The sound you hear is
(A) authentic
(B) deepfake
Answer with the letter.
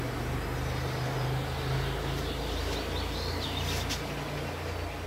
A